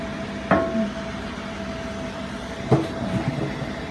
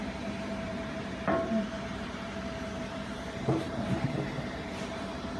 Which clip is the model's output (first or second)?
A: second